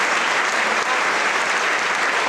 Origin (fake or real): real